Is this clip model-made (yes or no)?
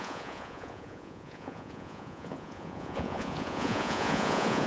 yes